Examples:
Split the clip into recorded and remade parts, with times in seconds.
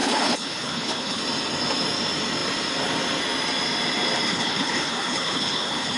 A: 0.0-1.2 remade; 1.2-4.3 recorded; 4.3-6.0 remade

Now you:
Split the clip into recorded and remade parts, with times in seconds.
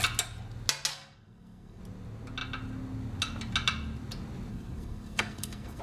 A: 0.0-0.9 recorded; 0.9-1.8 remade; 1.8-4.5 recorded; 4.5-5.8 remade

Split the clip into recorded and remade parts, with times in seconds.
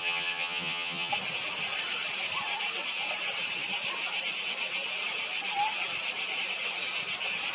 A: 0.0-1.1 remade; 1.1-7.5 recorded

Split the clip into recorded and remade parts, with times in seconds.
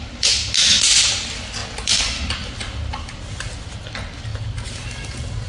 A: 0.0-5.5 recorded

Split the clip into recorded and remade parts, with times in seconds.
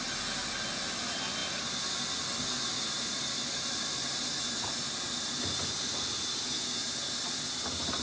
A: 0.0-8.0 recorded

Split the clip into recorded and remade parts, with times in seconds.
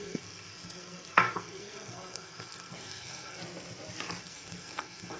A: 0.0-3.4 remade; 3.4-4.2 recorded; 4.2-5.2 remade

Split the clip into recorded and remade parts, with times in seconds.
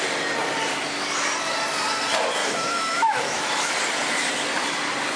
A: 0.0-2.4 recorded; 2.4-3.8 remade; 3.8-5.2 recorded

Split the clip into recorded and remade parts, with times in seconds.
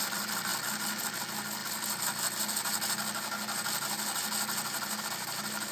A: 0.0-5.7 recorded